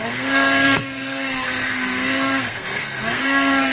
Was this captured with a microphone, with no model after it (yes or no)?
no